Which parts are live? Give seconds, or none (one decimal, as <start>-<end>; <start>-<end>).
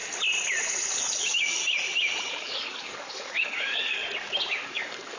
0.0-1.2; 1.6-2.3; 4.0-4.5